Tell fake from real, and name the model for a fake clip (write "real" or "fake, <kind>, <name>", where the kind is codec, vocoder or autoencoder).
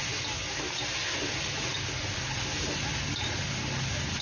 real